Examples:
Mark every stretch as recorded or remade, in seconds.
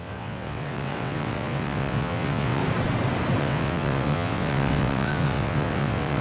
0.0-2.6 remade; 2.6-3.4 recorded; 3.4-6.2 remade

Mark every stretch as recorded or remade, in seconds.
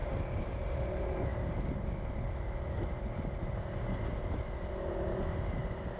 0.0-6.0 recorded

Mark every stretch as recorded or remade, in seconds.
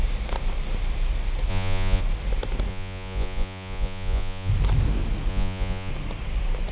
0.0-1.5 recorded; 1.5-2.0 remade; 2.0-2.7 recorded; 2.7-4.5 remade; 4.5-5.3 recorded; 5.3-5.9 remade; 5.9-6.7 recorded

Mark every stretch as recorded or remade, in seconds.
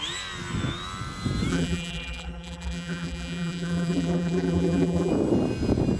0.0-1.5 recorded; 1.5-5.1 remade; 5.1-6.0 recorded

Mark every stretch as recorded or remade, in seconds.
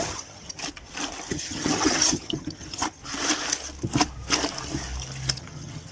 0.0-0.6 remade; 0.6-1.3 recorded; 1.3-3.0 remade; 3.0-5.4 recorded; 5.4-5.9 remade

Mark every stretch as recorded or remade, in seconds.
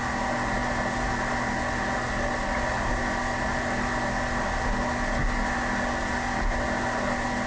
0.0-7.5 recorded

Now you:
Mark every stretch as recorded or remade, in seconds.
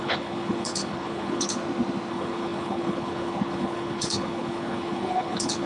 0.0-1.6 remade; 1.6-2.1 recorded; 2.1-5.7 remade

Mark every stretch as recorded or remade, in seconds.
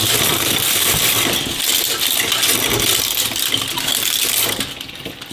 0.0-1.7 remade; 1.7-5.3 recorded